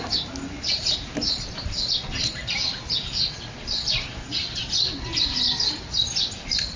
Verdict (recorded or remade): recorded